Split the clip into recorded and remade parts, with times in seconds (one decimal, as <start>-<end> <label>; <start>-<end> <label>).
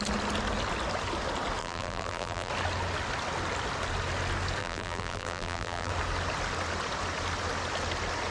0.0-1.6 recorded; 1.6-2.5 remade; 2.5-4.6 recorded; 4.6-5.9 remade; 5.9-8.3 recorded